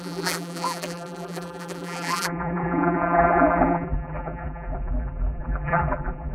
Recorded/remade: remade